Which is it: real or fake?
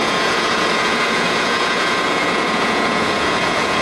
fake